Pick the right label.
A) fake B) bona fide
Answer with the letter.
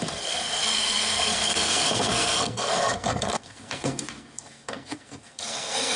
A